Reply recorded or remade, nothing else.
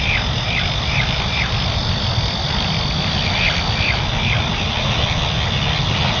recorded